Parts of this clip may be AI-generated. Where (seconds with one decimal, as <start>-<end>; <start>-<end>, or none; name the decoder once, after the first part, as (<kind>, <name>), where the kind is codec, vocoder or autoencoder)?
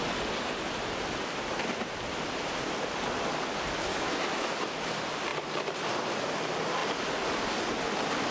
3.9-4.5 (autoencoder, DAC-VAE)